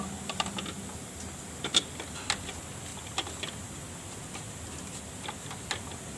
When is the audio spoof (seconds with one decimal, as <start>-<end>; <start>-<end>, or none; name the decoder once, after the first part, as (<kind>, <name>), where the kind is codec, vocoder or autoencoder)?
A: none